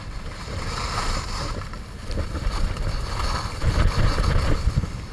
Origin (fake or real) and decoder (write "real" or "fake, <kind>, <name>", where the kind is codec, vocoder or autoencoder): real